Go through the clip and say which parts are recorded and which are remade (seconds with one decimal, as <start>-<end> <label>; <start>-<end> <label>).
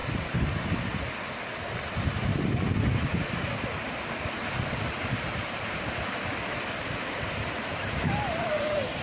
0.0-9.0 recorded